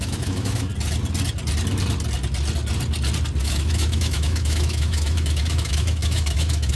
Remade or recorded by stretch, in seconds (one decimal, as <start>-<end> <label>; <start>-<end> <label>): 0.0-0.7 remade; 0.7-3.4 recorded; 3.4-6.7 remade